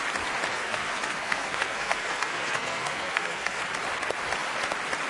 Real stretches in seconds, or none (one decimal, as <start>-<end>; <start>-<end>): 0.0-0.5; 3.6-5.1